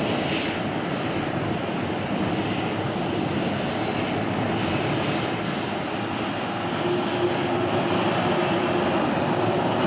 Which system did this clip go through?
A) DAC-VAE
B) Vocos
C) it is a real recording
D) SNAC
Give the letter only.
C